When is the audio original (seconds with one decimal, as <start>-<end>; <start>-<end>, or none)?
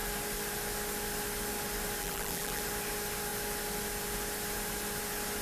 0.0-2.0; 2.6-5.4